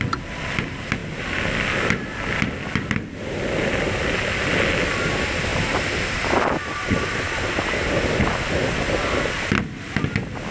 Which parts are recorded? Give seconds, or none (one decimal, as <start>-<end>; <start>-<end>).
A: 0.0-10.5